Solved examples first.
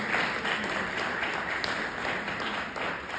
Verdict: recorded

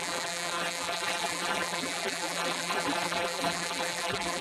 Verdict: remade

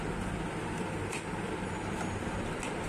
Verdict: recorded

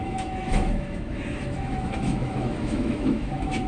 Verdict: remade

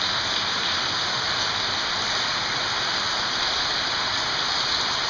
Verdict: recorded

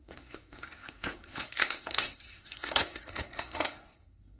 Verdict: remade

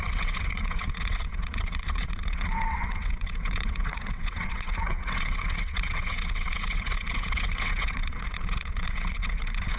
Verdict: remade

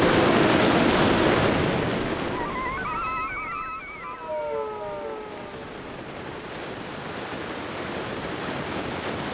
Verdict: recorded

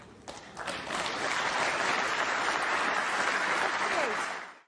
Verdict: recorded